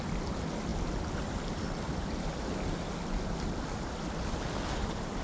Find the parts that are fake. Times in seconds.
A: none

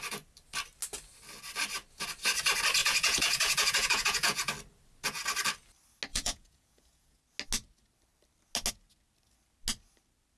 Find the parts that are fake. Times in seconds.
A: 2.8-4.5 (vocoder, Vocos); 6.1-7.2

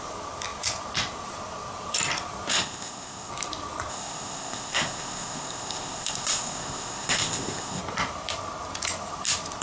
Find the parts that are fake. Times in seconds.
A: 2.5-3.3 (codec, ZipCodec); 3.9-7.8

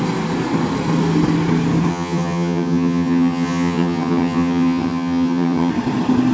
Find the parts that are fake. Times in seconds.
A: 1.9-5.7 (vocoder, HiFi-GAN)

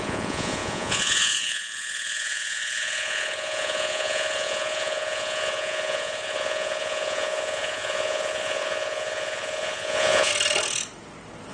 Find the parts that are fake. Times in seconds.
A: 0.0-10.3 (vocoder, Vocos)

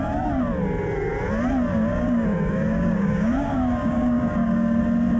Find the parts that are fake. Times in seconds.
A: 1.7-4.8 (codec, DAC)